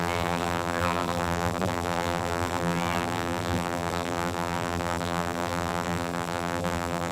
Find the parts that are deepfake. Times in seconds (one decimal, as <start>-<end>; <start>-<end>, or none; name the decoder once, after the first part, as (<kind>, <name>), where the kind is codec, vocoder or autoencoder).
0.0-7.1 (vocoder, BigVGAN v2)